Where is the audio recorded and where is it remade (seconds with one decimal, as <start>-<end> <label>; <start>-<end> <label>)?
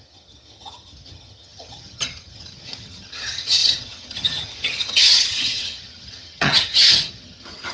0.0-7.7 remade